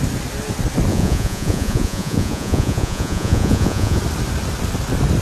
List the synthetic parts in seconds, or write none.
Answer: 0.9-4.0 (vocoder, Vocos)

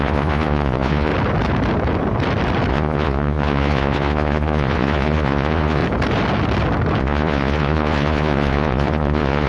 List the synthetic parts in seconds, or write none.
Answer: 0.0-1.1 (vocoder, Vocos); 2.7-5.8; 7.0-9.5

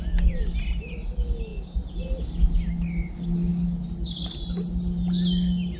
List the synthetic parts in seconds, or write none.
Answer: 1.5-2.0 (vocoder, Vocos)

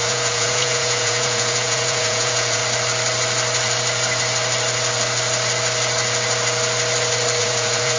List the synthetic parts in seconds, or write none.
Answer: 0.0-2.6 (vocoder, Vocos); 7.4-8.0

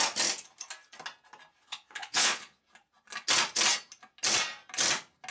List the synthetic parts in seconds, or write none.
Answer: 1.6-2.6 (vocoder, Vocos)

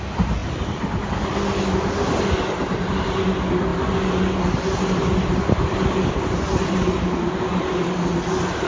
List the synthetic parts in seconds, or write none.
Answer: none

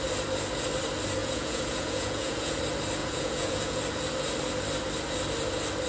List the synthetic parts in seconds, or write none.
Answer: 1.2-2.6 (vocoder, Vocos); 3.0-3.8

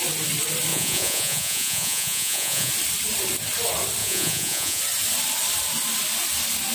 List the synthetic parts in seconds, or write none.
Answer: 0.7-2.7 (vocoder, Vocos); 4.0-4.8